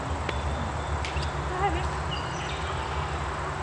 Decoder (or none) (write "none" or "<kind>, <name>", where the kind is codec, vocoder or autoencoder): none